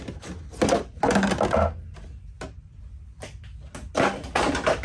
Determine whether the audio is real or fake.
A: real